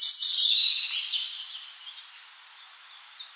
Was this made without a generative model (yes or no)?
yes